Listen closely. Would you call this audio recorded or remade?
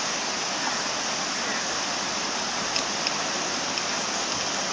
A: recorded